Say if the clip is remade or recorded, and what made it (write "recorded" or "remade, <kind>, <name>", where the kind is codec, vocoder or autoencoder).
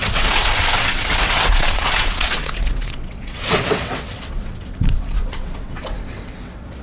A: remade, vocoder, WaveNeXt